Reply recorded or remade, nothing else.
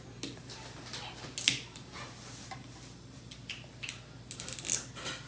recorded